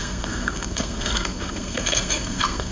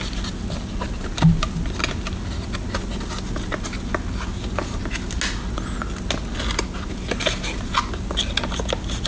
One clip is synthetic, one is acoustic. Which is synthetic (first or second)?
first